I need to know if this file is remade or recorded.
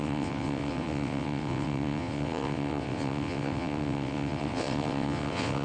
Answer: remade